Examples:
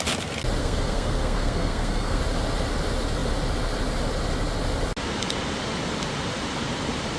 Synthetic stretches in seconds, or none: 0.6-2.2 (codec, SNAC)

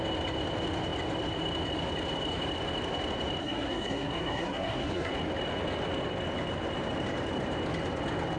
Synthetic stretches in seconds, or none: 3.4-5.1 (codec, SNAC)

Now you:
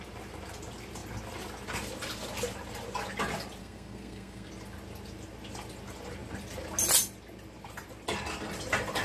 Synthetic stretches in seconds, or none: 3.6-4.5 (codec, SNAC)

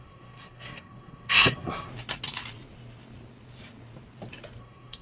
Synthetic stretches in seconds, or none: 0.0-1.9 (codec, SNAC); 4.6-5.0

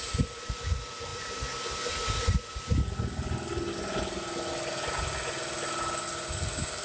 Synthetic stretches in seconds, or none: none

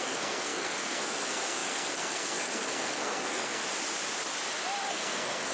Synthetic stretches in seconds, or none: 0.0-3.6 (codec, SNAC); 4.9-5.5

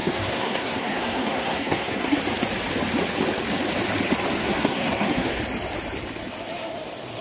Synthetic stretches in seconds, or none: 0.0-2.2 (codec, SNAC); 4.4-5.4